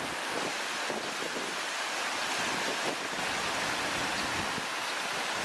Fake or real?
real